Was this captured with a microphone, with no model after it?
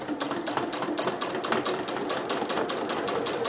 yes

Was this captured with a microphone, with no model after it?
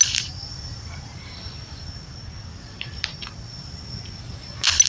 yes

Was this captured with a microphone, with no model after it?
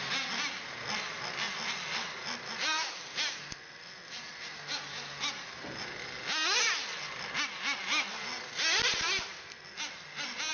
yes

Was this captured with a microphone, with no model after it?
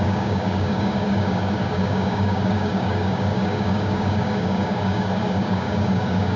no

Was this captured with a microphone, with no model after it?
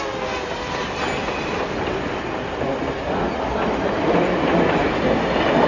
yes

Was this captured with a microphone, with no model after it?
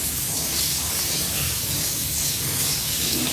no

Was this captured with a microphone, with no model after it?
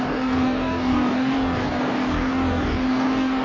no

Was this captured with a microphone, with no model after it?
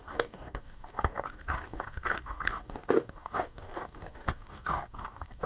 no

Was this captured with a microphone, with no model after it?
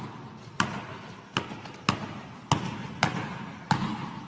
yes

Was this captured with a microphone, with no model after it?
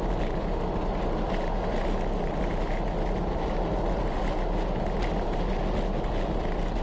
yes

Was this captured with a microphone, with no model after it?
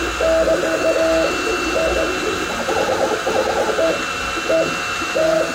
yes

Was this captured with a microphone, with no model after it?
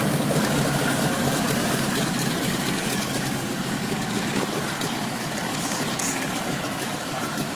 no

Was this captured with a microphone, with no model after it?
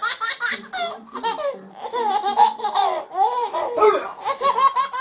yes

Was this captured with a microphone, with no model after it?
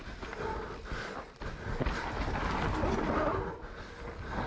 yes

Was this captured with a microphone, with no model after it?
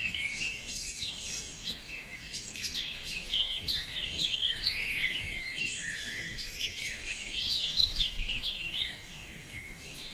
no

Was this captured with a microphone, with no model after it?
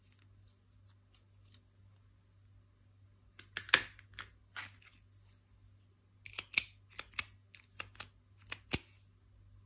yes